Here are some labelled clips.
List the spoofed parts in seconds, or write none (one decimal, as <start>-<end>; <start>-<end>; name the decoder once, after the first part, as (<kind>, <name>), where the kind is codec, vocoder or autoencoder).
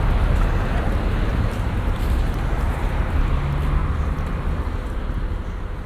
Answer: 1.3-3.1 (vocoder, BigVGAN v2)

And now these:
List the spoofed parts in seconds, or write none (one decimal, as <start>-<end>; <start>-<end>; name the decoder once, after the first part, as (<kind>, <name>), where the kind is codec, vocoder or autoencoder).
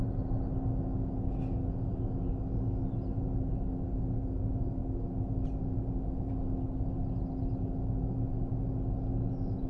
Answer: none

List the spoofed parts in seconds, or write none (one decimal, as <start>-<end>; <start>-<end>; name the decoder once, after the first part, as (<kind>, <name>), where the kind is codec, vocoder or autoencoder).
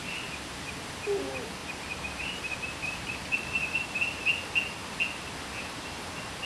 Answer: 1.6-3.1 (vocoder, BigVGAN v2)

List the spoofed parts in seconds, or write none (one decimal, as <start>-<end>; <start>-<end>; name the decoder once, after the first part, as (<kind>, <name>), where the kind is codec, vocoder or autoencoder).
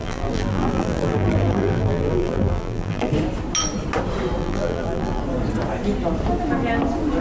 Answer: 0.0-3.1 (vocoder, BigVGAN v2); 4.4-5.2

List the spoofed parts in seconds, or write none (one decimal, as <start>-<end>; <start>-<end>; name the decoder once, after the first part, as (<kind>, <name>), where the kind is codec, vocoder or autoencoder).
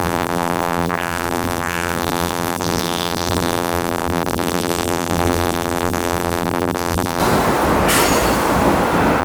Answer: 0.0-7.2 (vocoder, BigVGAN v2)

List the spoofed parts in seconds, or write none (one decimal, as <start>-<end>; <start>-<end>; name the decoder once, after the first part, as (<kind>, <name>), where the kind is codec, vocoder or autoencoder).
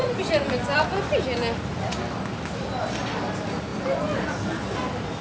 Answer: none